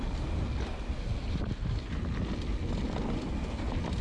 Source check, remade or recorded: recorded